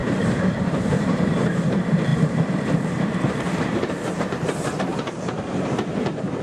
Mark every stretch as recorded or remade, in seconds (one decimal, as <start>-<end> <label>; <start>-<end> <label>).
0.0-6.4 remade